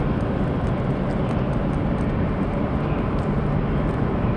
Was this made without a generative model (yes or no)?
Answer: yes